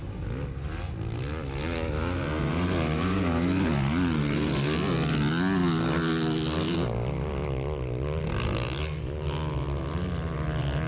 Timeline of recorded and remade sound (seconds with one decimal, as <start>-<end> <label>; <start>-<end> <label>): 0.0-10.9 recorded